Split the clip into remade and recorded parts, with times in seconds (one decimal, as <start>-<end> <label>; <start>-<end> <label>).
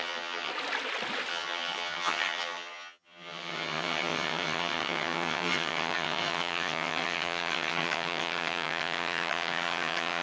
0.0-0.5 remade; 0.5-1.3 recorded; 1.3-10.2 remade